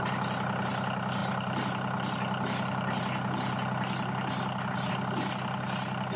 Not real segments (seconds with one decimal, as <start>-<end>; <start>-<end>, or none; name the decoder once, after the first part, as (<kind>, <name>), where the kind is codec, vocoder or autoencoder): none